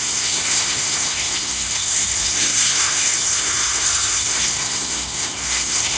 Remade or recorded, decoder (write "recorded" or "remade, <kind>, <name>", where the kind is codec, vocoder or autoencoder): remade, codec, SNAC